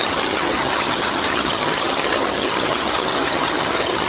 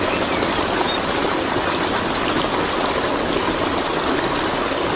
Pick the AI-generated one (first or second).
first